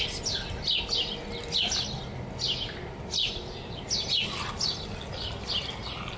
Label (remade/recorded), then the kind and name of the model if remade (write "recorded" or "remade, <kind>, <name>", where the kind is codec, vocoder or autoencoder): recorded